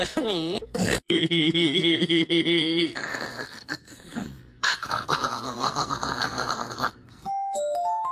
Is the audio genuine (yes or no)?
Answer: no